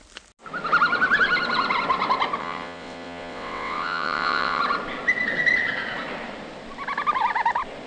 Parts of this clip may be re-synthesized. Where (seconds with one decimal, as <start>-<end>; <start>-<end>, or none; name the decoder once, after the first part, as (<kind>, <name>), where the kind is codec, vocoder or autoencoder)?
2.4-4.6 (vocoder, WaveNeXt)